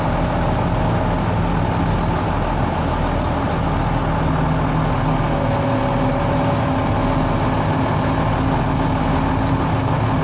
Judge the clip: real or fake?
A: real